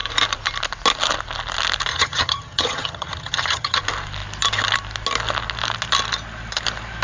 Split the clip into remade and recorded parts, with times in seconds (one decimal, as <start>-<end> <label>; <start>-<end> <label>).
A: 0.0-1.9 recorded; 1.9-3.8 remade; 3.8-7.0 recorded